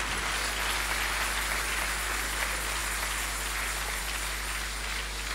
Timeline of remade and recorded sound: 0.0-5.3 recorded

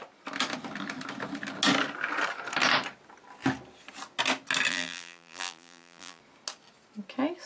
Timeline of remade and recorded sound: 0.0-4.7 recorded; 4.7-6.2 remade; 6.2-7.5 recorded

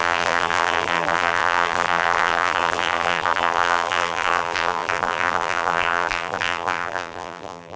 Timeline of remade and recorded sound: 0.0-7.8 remade